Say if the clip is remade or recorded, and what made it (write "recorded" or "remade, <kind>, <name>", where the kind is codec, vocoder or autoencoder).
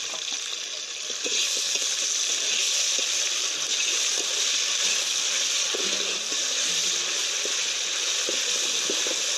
recorded